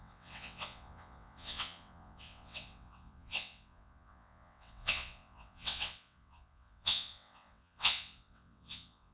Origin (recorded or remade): remade